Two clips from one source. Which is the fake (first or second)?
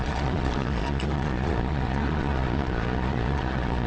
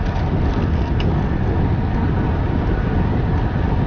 first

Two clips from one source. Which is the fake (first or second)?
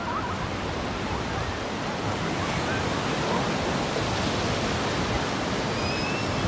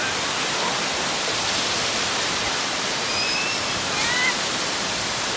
second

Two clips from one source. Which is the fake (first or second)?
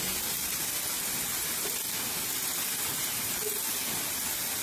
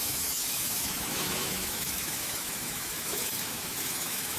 second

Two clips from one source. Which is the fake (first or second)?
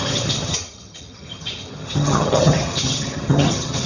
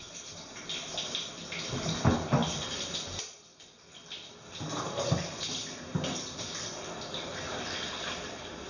first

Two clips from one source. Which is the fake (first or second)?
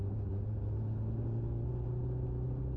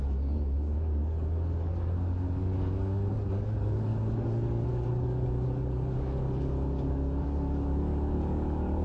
second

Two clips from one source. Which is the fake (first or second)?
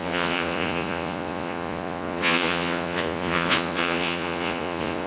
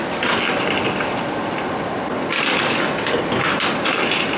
first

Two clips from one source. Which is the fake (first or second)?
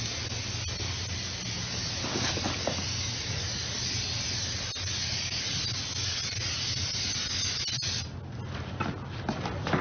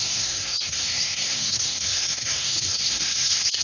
second